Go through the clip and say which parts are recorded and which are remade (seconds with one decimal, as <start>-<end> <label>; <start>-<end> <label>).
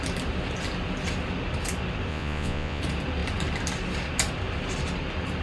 0.0-2.1 recorded; 2.1-2.8 remade; 2.8-5.4 recorded